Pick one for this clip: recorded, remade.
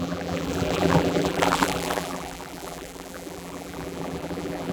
remade